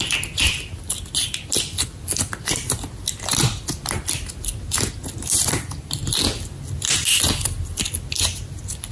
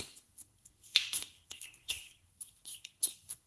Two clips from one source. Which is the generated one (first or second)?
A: second